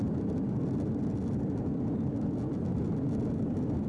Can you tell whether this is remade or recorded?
remade